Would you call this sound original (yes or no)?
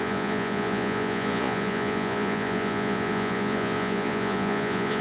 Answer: no